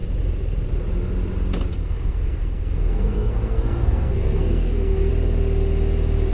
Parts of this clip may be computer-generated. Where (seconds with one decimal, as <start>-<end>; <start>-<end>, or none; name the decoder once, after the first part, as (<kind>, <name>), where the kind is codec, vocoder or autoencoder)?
1.7-5.1 (codec, SNAC)